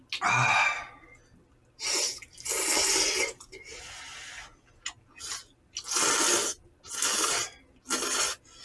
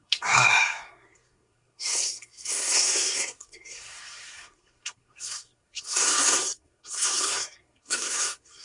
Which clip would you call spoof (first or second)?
second